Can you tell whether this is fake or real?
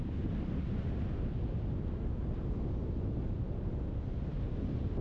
real